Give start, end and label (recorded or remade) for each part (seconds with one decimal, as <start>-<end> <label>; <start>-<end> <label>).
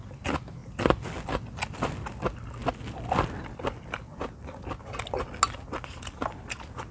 0.0-6.9 recorded